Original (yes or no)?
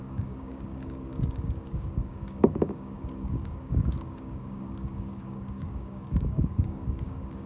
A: no